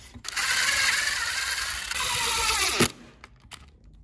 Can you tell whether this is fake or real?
real